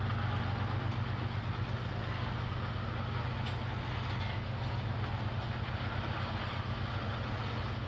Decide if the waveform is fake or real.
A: real